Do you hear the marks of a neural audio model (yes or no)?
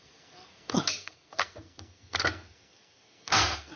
yes